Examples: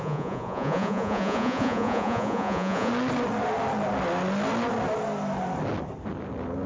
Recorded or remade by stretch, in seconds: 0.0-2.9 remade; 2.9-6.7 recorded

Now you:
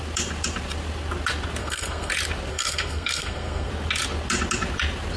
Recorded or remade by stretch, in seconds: 0.0-1.6 recorded; 1.6-2.1 remade; 2.1-2.5 recorded; 2.5-3.7 remade; 3.7-5.2 recorded

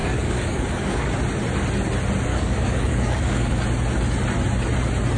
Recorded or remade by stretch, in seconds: 0.0-1.1 remade; 1.1-2.3 recorded; 2.3-3.6 remade; 3.6-5.2 recorded

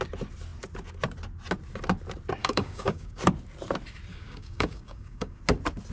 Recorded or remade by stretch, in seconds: 0.0-2.4 recorded; 2.4-3.2 remade; 3.2-4.1 recorded; 4.1-5.4 remade; 5.4-5.9 recorded

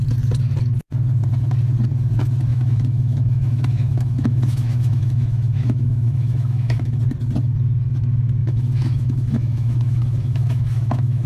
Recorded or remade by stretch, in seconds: 0.0-2.5 recorded; 2.5-7.0 remade; 7.0-8.4 recorded; 8.4-11.3 remade

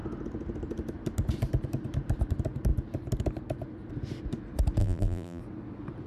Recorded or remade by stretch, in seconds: 0.0-4.8 recorded; 4.8-5.4 remade; 5.4-6.1 recorded